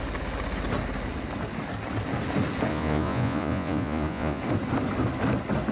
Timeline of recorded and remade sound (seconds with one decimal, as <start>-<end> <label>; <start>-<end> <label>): 0.0-2.7 recorded; 2.7-4.4 remade; 4.4-5.7 recorded